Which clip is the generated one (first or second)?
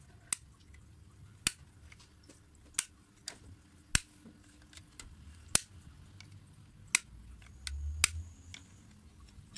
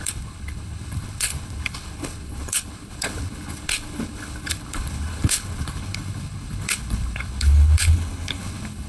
second